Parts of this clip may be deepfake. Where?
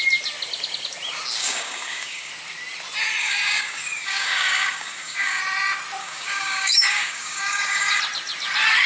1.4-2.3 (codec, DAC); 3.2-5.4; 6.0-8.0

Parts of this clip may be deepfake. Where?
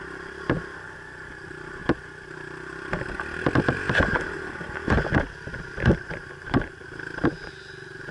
none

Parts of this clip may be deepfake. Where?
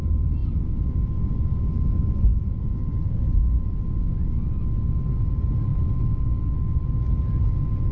none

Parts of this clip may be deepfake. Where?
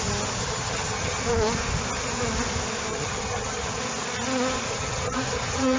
0.4-1.2 (vocoder, HiFi-GAN); 2.9-3.8; 4.7-5.8